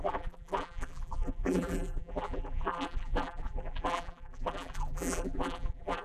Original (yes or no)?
no